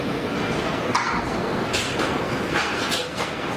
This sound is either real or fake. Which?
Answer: fake